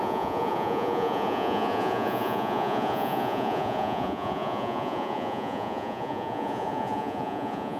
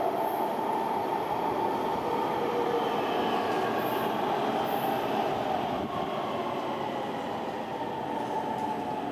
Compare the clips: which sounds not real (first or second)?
first